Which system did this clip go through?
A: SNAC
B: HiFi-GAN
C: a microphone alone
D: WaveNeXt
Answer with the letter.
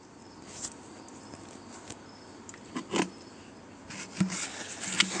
C